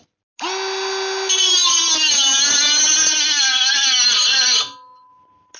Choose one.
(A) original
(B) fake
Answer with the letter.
A